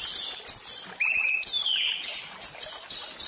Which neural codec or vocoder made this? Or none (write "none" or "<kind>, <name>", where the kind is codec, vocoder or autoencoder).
none